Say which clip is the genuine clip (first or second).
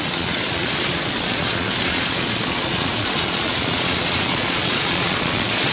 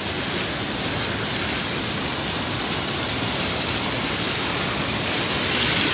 second